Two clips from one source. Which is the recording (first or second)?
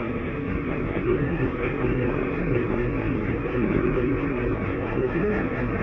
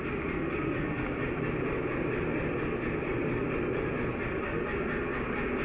second